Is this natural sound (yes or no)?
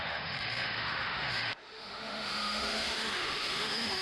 no